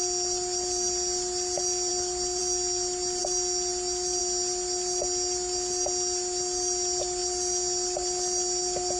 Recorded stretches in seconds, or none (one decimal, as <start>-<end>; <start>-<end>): 0.0-9.0